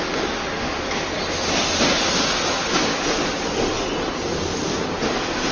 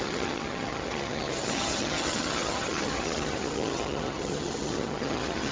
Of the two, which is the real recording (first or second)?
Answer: first